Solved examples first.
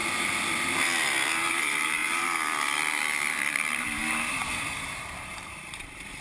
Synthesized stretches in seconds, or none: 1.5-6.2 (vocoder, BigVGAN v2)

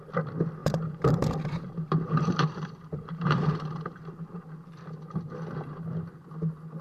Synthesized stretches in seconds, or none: 0.6-4.4 (vocoder, BigVGAN v2)

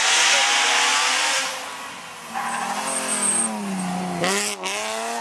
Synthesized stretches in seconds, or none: none

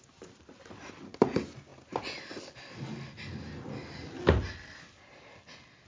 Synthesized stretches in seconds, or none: none

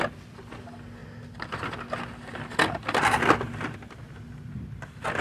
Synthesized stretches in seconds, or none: none

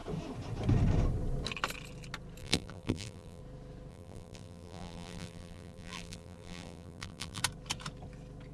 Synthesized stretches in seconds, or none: 2.4-3.4 (vocoder, BigVGAN v2); 3.9-7.4

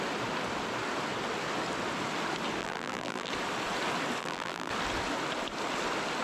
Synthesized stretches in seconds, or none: 2.6-3.3 (vocoder, BigVGAN v2); 4.2-4.7